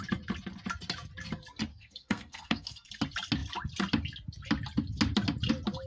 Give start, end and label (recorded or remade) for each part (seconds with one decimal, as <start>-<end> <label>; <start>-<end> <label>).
0.0-1.7 recorded; 1.7-2.9 remade; 2.9-5.9 recorded